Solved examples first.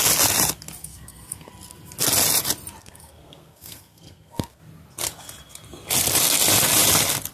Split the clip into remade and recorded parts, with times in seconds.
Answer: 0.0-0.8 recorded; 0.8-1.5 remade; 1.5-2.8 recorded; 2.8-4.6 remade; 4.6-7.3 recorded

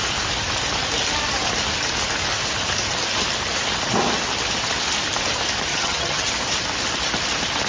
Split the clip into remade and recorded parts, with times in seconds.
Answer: 0.0-5.7 recorded; 5.7-6.3 remade; 6.3-7.7 recorded